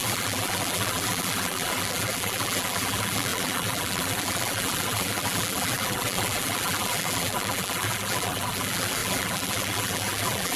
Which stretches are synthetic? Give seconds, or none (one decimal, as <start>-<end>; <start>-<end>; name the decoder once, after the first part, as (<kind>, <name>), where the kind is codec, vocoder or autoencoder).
0.0-10.6 (vocoder, BigVGAN v2)